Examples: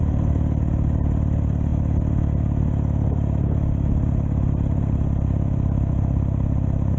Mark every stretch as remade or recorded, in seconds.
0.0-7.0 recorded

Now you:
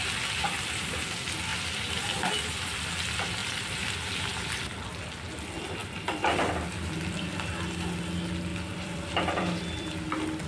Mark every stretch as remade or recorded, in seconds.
0.0-1.5 recorded; 1.5-2.3 remade; 2.3-3.4 recorded; 3.4-4.2 remade; 4.2-5.8 recorded; 5.8-6.5 remade; 6.5-8.5 recorded; 8.5-10.5 remade

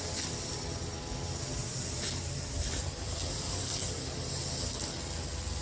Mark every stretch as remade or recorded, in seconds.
0.0-0.5 remade; 0.5-1.6 recorded; 1.6-4.7 remade; 4.7-5.6 recorded

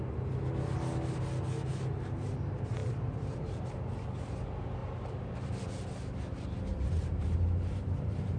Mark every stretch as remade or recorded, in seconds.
0.0-2.8 recorded; 2.8-3.7 remade; 3.7-4.8 recorded; 4.8-5.6 remade; 5.6-6.7 recorded; 6.7-8.4 remade

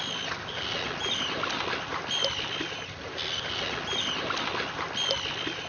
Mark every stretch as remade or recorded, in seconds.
0.0-1.9 recorded; 1.9-3.5 remade; 3.5-5.7 recorded

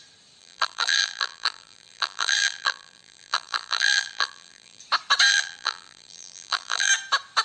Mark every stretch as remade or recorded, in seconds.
0.0-0.4 recorded; 0.4-4.8 remade; 4.8-5.3 recorded; 5.3-6.9 remade; 6.9-7.4 recorded

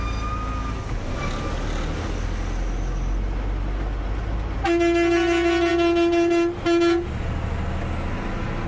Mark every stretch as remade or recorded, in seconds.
0.0-8.7 recorded

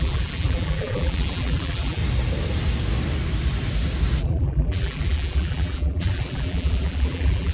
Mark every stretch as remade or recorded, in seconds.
0.0-2.0 remade; 2.0-4.2 recorded; 4.2-7.5 remade